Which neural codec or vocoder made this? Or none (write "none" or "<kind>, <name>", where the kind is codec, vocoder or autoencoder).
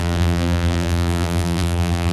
vocoder, BigVGAN v2